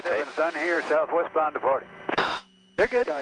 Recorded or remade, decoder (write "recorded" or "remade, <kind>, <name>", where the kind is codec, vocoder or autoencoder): remade, vocoder, Vocos